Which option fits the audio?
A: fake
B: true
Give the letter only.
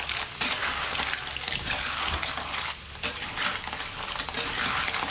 B